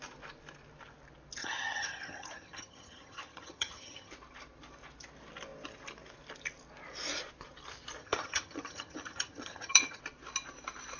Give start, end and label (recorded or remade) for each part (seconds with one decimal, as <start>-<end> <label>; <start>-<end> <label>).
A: 0.0-1.4 recorded; 1.4-4.1 remade; 4.1-8.0 recorded; 8.0-10.0 remade; 10.0-11.0 recorded